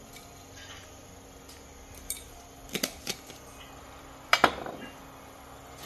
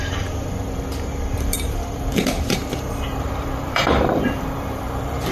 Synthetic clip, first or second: second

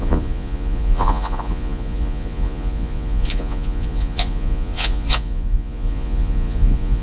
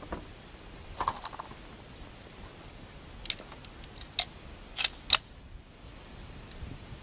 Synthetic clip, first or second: first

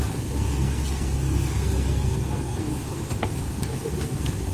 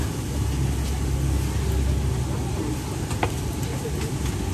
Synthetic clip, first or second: first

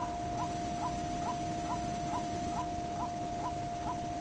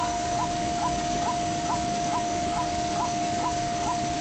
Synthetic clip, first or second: second